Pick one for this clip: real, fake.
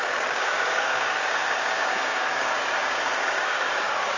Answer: fake